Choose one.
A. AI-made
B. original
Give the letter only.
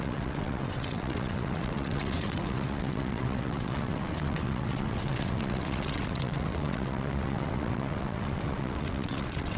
A